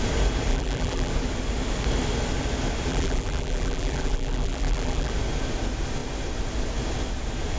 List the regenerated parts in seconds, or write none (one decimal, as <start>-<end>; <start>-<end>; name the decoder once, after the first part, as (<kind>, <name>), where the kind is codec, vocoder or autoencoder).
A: 0.5-1.1 (vocoder, BigVGAN v2); 2.9-5.1